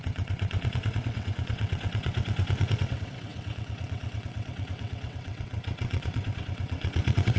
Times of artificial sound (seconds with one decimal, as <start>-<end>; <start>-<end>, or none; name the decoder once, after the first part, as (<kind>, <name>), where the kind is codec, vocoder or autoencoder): 0.0-7.4 (vocoder, WaveNeXt)